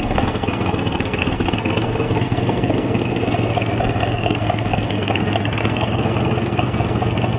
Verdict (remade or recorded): remade